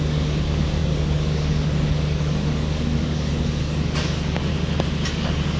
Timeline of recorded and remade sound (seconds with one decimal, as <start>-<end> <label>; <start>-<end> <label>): 0.0-4.5 remade; 4.5-5.1 recorded; 5.1-5.6 remade